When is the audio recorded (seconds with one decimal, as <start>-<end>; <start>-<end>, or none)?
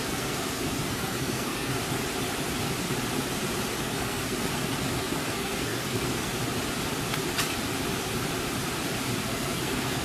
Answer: 1.7-3.8; 6.3-9.3